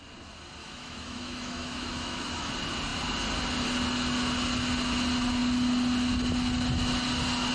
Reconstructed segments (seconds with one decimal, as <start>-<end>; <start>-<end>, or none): 0.6-2.5